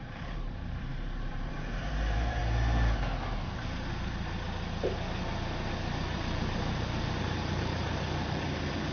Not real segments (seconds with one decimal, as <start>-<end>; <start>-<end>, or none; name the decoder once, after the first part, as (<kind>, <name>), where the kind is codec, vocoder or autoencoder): 0.0-2.4 (vocoder, BigVGAN v2); 6.0-8.9